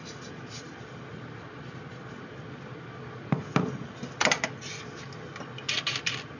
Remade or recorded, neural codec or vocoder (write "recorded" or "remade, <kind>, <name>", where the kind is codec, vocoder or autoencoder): recorded